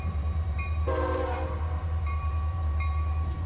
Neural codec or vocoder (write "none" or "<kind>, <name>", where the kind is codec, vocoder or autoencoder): vocoder, BigVGAN v2